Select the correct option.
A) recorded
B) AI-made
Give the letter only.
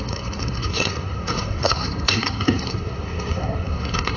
B